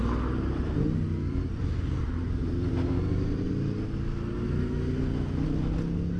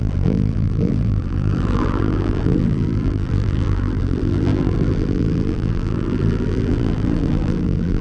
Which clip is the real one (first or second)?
first